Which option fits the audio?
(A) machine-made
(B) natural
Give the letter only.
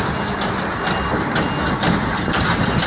B